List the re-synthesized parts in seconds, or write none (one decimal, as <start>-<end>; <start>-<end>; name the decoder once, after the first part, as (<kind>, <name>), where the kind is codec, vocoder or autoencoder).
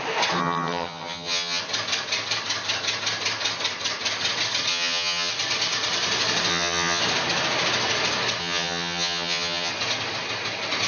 0.4-1.6 (vocoder, HiFi-GAN); 4.7-5.3; 6.5-7.0; 8.4-9.7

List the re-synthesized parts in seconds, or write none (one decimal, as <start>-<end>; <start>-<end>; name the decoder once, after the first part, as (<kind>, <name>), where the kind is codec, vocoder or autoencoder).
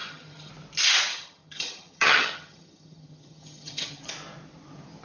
0.0-0.5 (vocoder, HiFi-GAN); 1.1-4.0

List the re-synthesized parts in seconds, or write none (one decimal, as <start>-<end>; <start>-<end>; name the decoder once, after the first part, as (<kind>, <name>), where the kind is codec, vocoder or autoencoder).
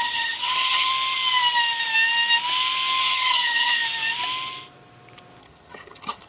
0.0-0.9 (vocoder, HiFi-GAN); 3.0-3.8; 5.4-6.3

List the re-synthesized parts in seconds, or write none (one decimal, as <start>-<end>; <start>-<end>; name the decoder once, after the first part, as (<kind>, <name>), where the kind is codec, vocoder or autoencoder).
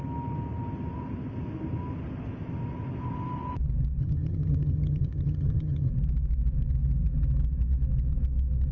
4.0-5.9 (vocoder, HiFi-GAN)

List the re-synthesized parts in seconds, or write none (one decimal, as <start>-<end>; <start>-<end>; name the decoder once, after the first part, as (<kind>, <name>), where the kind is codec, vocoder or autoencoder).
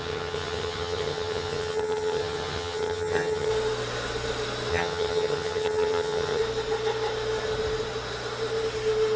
0.0-3.5 (vocoder, HiFi-GAN); 4.7-6.4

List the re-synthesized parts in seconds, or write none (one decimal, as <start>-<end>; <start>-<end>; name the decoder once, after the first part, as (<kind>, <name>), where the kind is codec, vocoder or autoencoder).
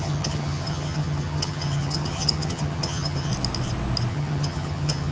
0.0-3.3 (vocoder, HiFi-GAN); 4.1-5.1